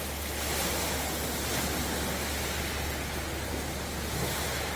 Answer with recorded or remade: recorded